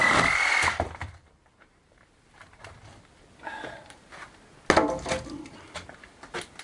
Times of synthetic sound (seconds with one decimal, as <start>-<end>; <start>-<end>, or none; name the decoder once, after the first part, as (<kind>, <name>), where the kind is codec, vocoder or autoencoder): 0.0-4.0 (vocoder, BigVGAN v2)